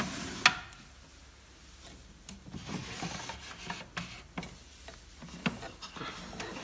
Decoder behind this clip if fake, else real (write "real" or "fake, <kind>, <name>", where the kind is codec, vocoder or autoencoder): real